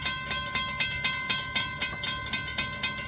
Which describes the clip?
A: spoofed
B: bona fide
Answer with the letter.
B